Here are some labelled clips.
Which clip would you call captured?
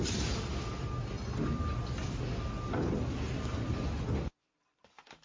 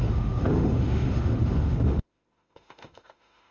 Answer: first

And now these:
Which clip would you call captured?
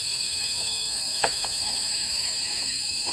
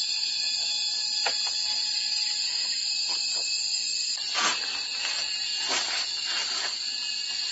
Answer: second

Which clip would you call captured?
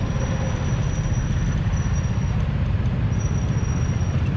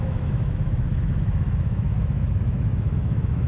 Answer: first